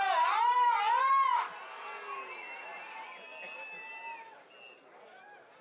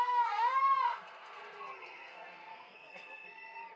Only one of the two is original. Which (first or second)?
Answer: first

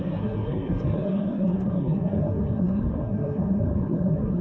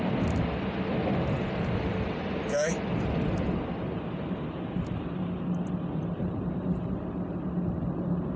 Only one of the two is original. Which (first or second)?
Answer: second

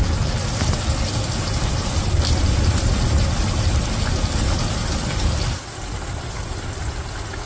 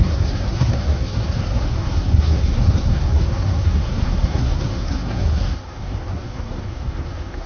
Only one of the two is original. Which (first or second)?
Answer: first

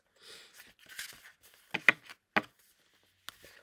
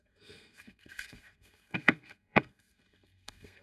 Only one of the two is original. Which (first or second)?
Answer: first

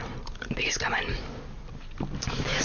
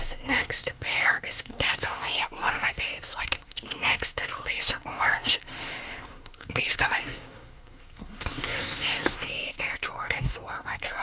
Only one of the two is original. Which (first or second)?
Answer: first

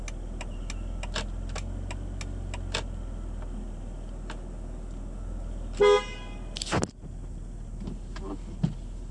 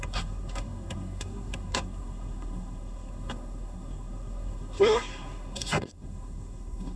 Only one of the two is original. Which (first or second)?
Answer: first